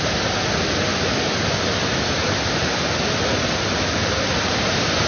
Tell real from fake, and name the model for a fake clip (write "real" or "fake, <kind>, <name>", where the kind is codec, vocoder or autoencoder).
real